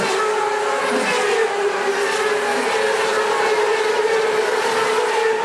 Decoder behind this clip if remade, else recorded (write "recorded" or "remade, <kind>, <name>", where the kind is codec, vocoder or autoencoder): recorded